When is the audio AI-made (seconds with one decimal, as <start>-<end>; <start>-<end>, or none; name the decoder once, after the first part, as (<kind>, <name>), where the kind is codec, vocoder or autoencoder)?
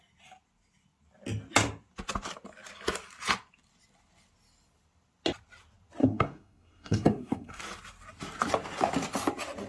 6.0-7.6 (codec, SNAC)